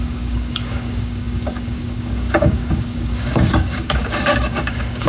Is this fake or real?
fake